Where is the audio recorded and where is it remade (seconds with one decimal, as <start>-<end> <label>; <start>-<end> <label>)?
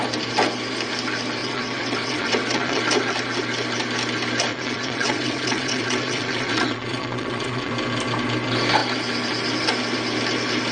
0.0-1.4 recorded; 1.4-2.8 remade; 2.8-4.5 recorded; 4.5-7.7 remade; 7.7-10.7 recorded